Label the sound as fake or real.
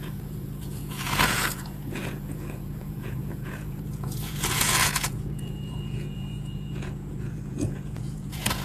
fake